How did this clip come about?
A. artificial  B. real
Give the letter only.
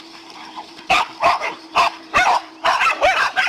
A